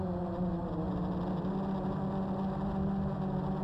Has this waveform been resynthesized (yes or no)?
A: no